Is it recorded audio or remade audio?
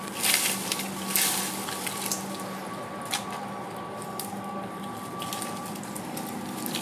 recorded